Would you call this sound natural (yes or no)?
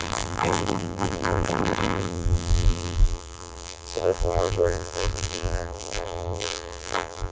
no